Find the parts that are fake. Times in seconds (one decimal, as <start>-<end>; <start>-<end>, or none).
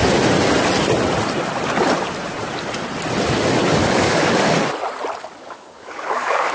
3.8-4.6; 5.2-6.5